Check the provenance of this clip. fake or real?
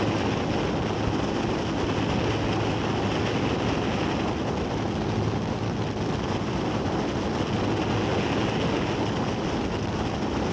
real